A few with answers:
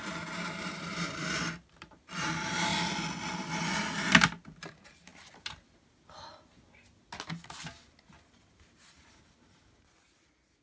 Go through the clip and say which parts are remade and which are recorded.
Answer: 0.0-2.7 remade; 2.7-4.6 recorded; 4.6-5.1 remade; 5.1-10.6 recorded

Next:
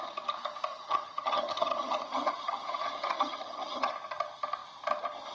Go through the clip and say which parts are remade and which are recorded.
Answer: 0.0-0.7 recorded; 0.7-3.9 remade; 3.9-5.3 recorded

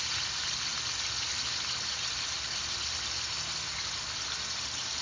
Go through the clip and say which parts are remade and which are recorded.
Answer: 0.0-5.0 recorded

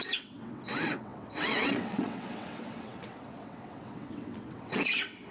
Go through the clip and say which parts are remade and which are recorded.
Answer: 0.0-5.3 remade

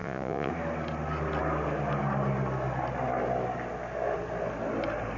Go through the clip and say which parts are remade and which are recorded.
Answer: 0.0-0.5 remade; 0.5-5.2 recorded

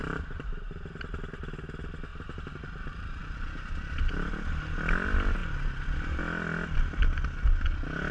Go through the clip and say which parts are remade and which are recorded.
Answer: 0.0-1.0 remade; 1.0-2.1 recorded; 2.1-3.2 remade; 3.2-8.1 recorded

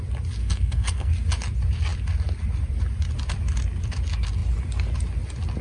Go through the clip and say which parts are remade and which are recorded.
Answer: 0.0-0.4 recorded; 0.4-1.1 remade; 1.1-5.6 recorded